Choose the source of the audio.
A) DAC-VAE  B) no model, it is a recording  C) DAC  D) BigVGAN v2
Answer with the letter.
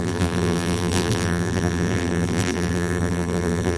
D